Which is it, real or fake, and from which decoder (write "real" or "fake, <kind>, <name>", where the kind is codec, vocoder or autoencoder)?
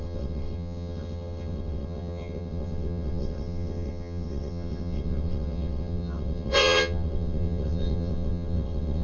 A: fake, vocoder, WaveNeXt